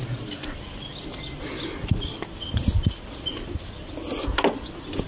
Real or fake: real